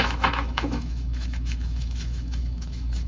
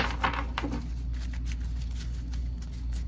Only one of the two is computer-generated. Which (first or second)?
first